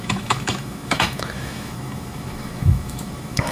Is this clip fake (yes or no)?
yes